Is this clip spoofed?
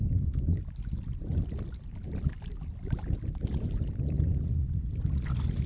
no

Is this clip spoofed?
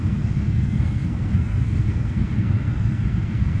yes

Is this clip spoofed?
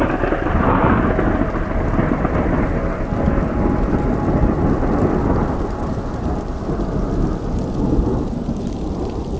no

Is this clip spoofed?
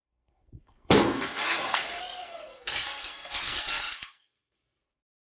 yes